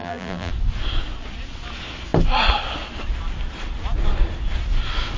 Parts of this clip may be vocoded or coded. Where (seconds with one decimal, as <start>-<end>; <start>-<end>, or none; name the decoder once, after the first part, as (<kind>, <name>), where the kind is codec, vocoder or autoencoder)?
0.0-0.5 (vocoder, BigVGAN v2)